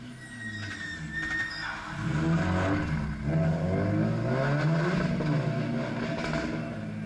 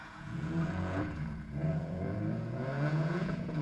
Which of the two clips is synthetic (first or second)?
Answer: second